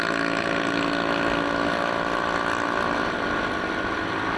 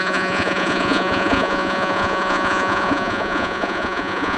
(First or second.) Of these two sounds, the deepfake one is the second